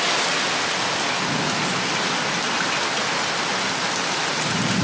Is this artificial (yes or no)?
no